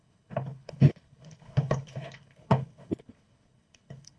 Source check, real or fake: fake